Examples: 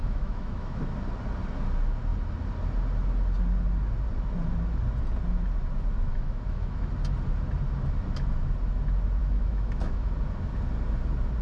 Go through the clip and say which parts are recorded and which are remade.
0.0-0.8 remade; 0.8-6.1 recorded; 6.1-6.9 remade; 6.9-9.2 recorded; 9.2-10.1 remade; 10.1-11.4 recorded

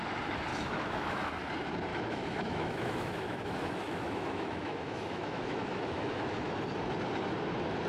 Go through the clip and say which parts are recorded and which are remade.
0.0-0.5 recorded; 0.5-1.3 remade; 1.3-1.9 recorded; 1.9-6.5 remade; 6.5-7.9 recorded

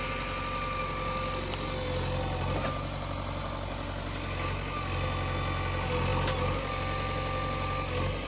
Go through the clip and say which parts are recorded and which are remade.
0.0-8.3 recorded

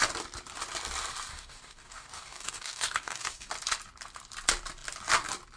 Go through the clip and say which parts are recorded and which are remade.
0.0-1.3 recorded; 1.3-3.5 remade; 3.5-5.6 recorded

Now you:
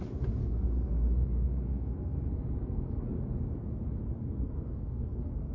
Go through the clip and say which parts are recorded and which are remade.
0.0-0.4 recorded; 0.4-2.2 remade; 2.2-2.6 recorded; 2.6-3.3 remade; 3.3-4.2 recorded; 4.2-5.5 remade

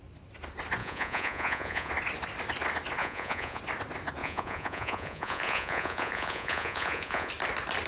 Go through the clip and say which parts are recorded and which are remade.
0.0-0.8 recorded; 0.8-1.9 remade; 1.9-3.0 recorded; 3.0-3.6 remade; 3.6-4.2 recorded; 4.2-7.3 remade; 7.3-7.9 recorded